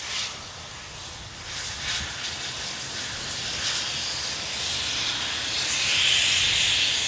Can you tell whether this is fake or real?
real